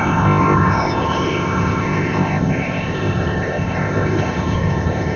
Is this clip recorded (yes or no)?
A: no